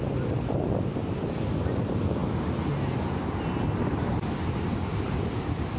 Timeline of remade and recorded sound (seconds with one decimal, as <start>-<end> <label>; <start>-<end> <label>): 0.0-5.8 recorded